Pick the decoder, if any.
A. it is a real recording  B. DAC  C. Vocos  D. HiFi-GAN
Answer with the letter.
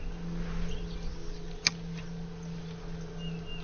A